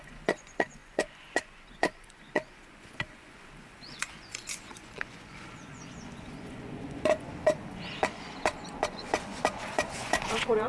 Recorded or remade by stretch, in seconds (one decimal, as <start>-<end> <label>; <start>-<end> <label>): 0.0-10.7 remade